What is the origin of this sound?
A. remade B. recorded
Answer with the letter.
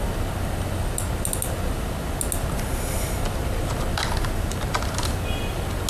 B